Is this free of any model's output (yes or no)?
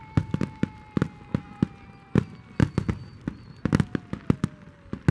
yes